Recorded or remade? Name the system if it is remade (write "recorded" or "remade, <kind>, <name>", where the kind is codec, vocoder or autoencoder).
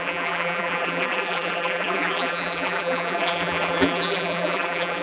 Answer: remade, vocoder, BigVGAN v2